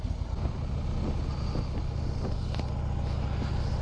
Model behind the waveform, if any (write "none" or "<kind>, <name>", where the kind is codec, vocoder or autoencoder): none